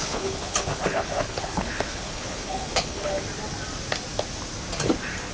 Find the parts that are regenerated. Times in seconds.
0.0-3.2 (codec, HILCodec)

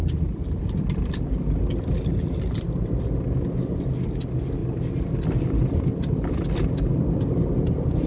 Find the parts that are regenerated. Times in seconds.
none

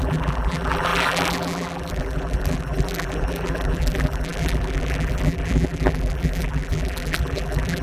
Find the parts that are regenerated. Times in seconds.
0.0-7.8 (vocoder, BigVGAN v2)